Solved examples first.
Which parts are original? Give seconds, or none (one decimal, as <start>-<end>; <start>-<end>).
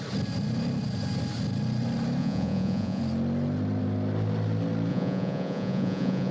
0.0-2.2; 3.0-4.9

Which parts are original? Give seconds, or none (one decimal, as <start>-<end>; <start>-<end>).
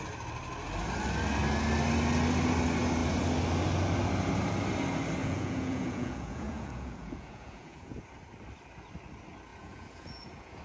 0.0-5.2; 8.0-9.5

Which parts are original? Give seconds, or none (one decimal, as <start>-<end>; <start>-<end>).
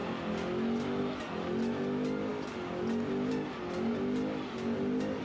0.0-5.2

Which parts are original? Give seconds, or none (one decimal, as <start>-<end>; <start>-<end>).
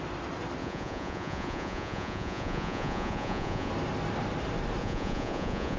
0.0-0.6; 3.7-4.8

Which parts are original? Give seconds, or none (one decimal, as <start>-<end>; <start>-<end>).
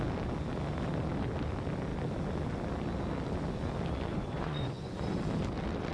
0.0-4.1; 5.2-5.9